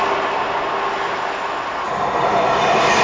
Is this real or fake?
real